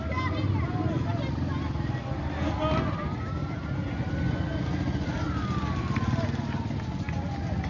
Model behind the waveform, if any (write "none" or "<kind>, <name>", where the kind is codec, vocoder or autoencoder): none